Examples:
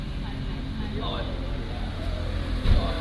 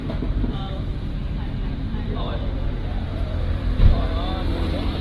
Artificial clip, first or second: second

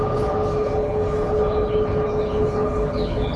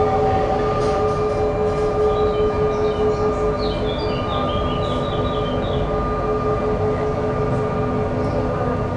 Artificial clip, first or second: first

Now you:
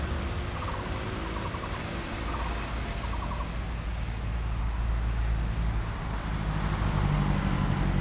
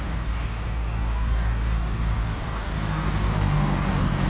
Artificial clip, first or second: second